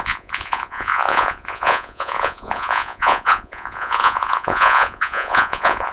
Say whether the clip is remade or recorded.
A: remade